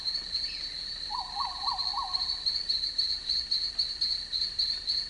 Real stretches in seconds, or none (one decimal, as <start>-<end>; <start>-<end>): 0.0-5.1